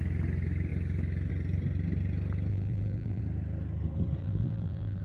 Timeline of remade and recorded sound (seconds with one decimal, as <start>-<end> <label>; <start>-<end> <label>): 0.0-2.5 recorded; 2.5-3.2 remade; 3.2-4.2 recorded; 4.2-5.0 remade